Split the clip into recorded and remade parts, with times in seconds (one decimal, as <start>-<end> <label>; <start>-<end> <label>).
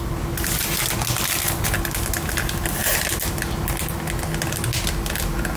0.0-5.6 recorded